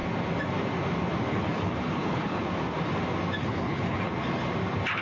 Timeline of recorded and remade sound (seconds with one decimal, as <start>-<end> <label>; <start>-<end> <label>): 0.0-1.3 recorded; 1.3-2.4 remade; 2.4-3.4 recorded; 3.4-4.1 remade; 4.1-5.0 recorded